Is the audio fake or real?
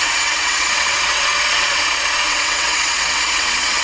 fake